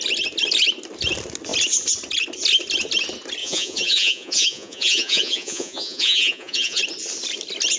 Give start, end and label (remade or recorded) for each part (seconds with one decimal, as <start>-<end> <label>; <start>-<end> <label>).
0.0-3.4 recorded; 3.4-6.8 remade; 6.8-7.8 recorded